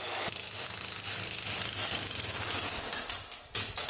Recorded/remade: recorded